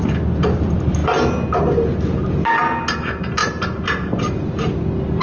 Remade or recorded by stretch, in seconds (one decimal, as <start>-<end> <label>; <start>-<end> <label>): 0.0-5.2 recorded

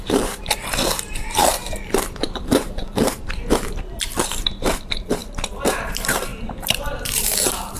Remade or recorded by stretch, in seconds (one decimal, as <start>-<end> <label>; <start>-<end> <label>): 0.0-7.8 remade

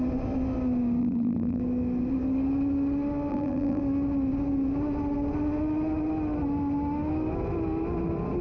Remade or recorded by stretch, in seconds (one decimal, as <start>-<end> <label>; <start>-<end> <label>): 0.0-1.0 recorded; 1.0-1.6 remade; 1.6-3.3 recorded; 3.3-3.8 remade; 3.8-8.4 recorded

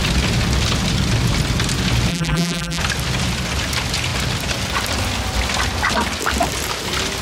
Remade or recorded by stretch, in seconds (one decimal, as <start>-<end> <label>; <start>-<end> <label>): 0.0-2.1 recorded; 2.1-2.8 remade; 2.8-7.2 recorded

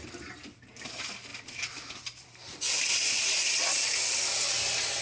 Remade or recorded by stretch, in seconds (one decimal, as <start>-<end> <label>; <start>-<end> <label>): 0.0-1.3 recorded; 1.3-3.1 remade; 3.1-5.0 recorded

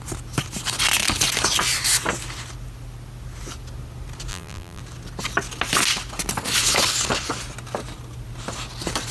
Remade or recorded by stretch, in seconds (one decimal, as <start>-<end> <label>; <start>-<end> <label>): 0.0-4.3 recorded; 4.3-4.8 remade; 4.8-9.1 recorded

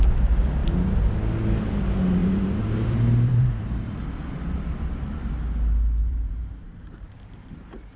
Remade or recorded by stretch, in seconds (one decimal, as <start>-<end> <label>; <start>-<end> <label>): 0.0-2.2 recorded; 2.2-5.3 remade; 5.3-6.0 recorded; 6.0-7.5 remade; 7.5-8.0 recorded